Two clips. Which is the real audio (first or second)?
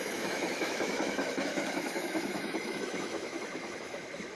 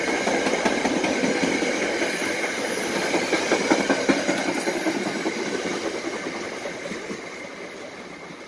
second